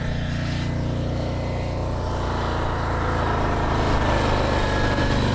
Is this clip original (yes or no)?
yes